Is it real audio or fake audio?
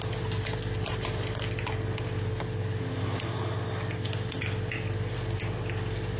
real